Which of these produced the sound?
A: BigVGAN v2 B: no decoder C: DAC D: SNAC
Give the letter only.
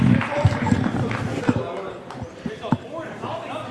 A